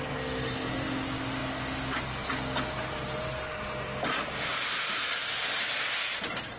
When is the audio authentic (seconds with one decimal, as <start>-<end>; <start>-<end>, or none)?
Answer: 0.0-6.6